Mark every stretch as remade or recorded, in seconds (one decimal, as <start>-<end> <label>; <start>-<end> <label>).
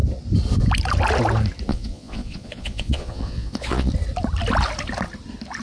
0.0-1.7 recorded; 1.7-3.9 remade; 3.9-5.6 recorded